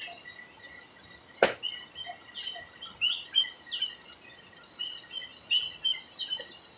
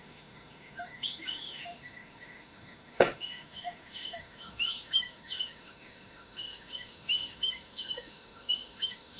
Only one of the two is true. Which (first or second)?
first